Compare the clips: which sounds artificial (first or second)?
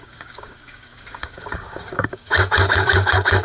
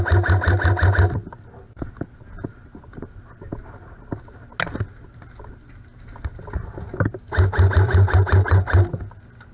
first